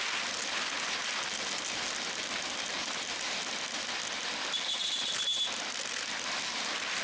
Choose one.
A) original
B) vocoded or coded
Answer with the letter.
A